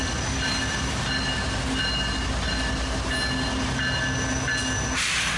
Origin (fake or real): real